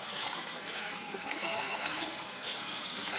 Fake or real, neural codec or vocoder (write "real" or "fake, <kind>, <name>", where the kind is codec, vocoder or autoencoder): fake, codec, SNAC